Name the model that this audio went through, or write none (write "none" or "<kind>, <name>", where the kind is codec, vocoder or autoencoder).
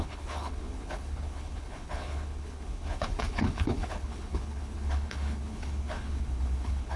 codec, HILCodec